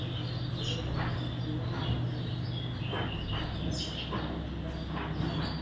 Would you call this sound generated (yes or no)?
no